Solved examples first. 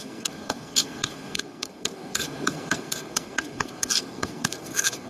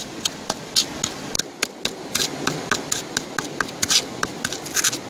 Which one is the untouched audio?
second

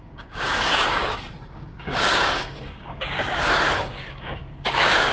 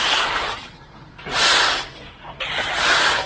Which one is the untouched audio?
second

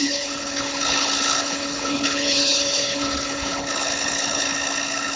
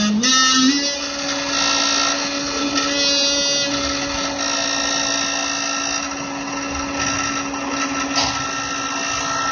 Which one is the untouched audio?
second